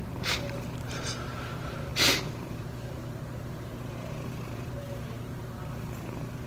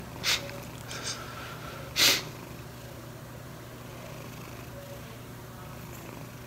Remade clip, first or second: first